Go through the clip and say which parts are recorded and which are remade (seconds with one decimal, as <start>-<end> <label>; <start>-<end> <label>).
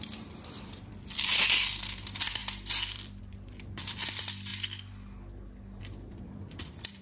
0.0-4.5 remade; 4.5-5.8 recorded; 5.8-7.0 remade